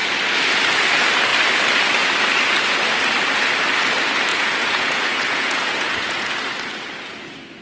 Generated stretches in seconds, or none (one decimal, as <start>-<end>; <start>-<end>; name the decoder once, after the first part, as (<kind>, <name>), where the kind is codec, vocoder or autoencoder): 4.3-6.3 (vocoder, Vocos)